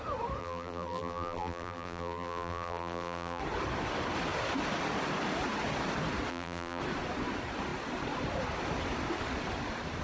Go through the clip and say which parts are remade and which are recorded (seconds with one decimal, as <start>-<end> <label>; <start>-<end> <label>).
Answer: 0.0-0.4 recorded; 0.4-3.4 remade; 3.4-6.3 recorded; 6.3-6.8 remade; 6.8-10.0 recorded